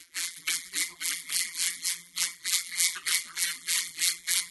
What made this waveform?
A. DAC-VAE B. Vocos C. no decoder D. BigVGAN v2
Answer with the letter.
D